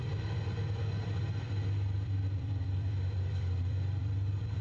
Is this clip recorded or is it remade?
remade